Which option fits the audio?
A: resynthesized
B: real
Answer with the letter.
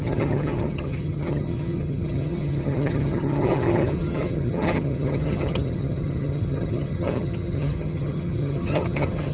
A